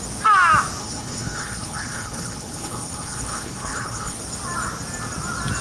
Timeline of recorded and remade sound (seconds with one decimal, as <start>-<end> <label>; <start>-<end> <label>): 0.0-0.8 recorded; 0.8-4.2 remade; 4.2-5.6 recorded